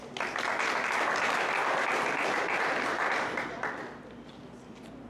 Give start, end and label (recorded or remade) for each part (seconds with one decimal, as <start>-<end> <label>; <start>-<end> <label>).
0.0-1.6 recorded; 1.6-5.1 remade

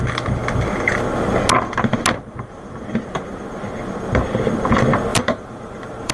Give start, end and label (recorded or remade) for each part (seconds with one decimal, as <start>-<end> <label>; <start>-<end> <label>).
0.0-5.1 recorded; 5.1-6.1 remade

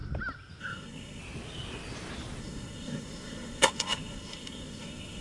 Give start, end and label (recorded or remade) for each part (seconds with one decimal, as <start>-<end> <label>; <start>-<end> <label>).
0.0-0.6 recorded; 0.6-1.2 remade; 1.2-2.4 recorded; 2.4-5.2 remade

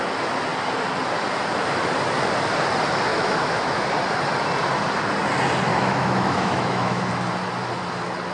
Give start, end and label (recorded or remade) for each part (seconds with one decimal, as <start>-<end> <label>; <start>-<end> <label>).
0.0-3.1 recorded; 3.1-3.9 remade; 3.9-5.7 recorded; 5.7-7.0 remade; 7.0-8.3 recorded

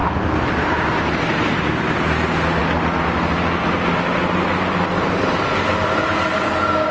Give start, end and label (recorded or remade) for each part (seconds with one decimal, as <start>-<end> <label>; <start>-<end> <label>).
0.0-6.9 recorded